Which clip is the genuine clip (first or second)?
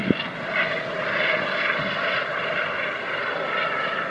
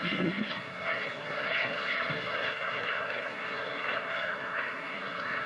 first